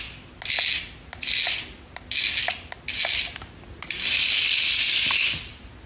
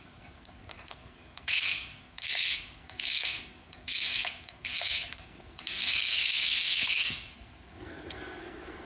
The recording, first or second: first